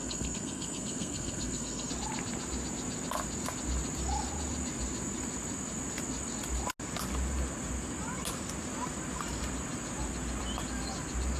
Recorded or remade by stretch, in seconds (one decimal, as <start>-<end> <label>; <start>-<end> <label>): 0.0-1.9 remade; 1.9-11.4 recorded